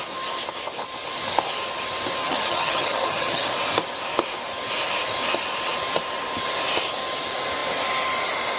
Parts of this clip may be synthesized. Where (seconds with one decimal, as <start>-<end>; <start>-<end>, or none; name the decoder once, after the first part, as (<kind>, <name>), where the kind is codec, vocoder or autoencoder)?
2.2-3.5 (vocoder, HiFi-GAN)